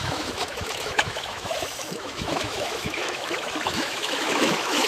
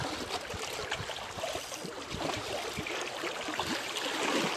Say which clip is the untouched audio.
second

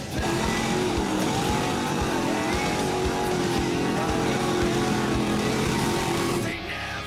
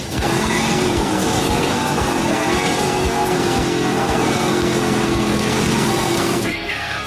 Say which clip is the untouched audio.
first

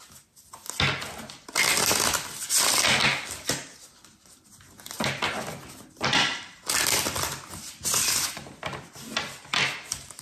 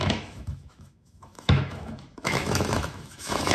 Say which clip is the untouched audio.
first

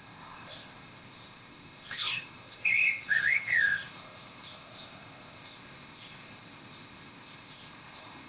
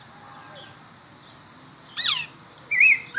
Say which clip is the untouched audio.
second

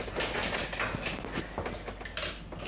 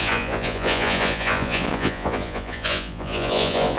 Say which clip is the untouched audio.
first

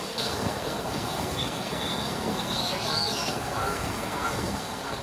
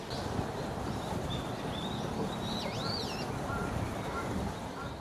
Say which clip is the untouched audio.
second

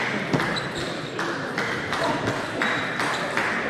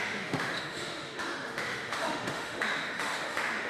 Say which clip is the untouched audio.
first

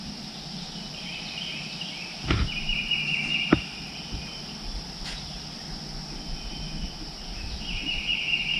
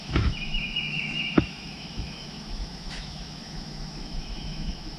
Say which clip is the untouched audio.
first